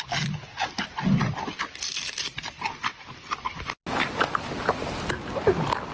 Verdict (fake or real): real